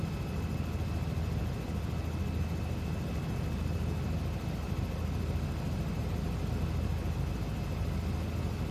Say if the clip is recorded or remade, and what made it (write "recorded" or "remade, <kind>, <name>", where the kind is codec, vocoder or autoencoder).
recorded